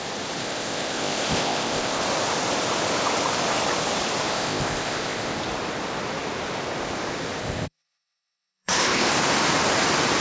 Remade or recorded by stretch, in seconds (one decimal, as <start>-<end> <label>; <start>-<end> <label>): 0.0-0.4 recorded; 0.4-2.0 remade; 2.0-4.3 recorded; 4.3-5.4 remade; 5.4-7.4 recorded; 7.4-9.1 remade; 9.1-10.2 recorded